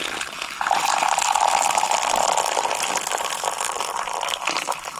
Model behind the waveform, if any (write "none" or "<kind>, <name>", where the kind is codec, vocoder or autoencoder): none